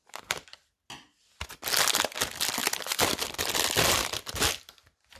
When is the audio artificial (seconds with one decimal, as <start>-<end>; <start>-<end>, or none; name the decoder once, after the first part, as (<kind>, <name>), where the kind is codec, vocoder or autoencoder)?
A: 0.0-0.9 (vocoder, BigVGAN v2); 2.6-4.6